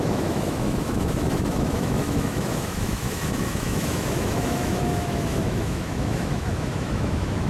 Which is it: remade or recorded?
remade